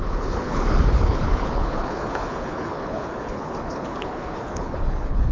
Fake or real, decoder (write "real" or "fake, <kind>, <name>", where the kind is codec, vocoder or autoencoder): fake, codec, HILCodec